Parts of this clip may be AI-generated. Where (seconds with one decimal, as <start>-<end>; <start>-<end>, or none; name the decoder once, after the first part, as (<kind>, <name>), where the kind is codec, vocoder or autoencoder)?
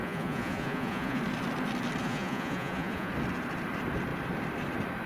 0.0-1.2 (vocoder, Vocos); 2.0-3.1